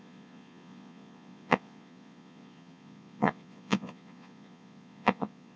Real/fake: fake